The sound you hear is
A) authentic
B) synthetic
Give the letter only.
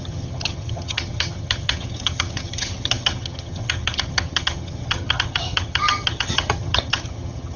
B